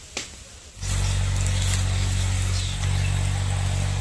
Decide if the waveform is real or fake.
real